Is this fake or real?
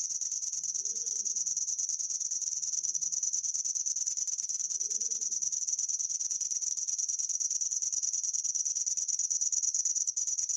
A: fake